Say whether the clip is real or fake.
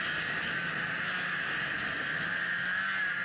real